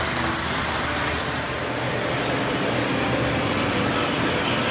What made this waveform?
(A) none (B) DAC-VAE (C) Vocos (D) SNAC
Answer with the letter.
A